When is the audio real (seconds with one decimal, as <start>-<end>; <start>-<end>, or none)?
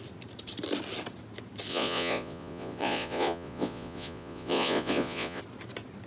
0.0-1.7; 5.4-6.1